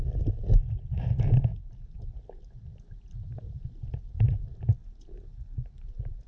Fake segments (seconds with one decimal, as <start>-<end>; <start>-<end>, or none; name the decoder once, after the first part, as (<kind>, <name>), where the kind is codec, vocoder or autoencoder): none